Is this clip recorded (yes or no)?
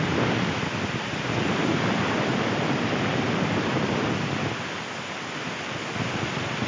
yes